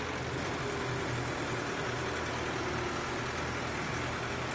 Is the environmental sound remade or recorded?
recorded